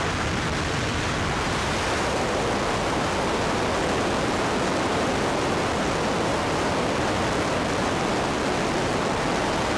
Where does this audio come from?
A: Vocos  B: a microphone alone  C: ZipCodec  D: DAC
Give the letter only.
B